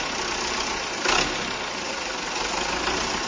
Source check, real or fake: real